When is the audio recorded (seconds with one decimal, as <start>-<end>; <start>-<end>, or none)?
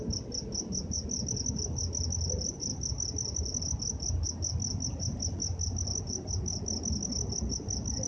0.0-8.1